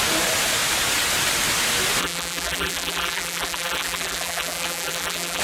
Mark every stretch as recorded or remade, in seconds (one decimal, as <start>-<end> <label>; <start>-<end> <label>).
0.0-2.0 recorded; 2.0-5.4 remade